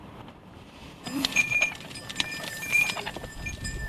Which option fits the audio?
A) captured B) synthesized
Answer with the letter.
B